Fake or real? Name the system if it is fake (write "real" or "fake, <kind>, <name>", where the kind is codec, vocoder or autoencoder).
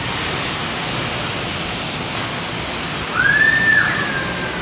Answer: real